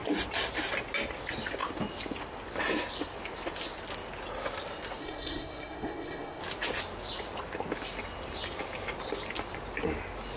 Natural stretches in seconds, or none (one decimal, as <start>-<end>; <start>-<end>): 0.0-5.0; 6.4-10.4